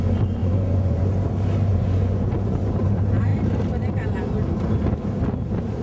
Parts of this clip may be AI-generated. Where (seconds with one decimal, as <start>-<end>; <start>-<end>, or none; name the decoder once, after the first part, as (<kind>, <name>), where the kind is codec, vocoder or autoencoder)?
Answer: 0.4-1.0 (vocoder, Vocos); 1.7-2.6